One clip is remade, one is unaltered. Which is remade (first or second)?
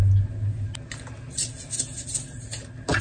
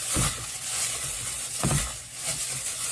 second